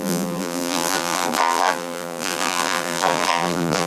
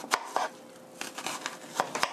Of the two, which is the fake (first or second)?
first